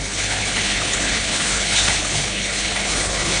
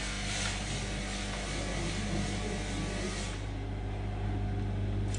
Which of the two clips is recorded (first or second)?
second